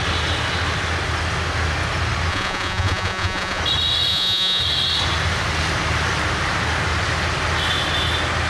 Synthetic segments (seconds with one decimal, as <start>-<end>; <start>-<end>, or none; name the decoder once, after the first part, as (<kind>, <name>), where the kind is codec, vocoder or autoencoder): 2.3-3.6 (vocoder, Vocos); 4.1-4.6